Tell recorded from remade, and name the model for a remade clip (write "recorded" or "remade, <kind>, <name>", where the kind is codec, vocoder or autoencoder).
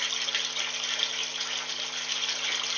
recorded